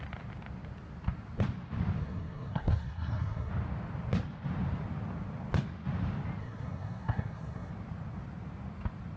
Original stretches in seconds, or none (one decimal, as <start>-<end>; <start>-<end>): 0.0-2.0; 3.5-6.4; 7.7-9.2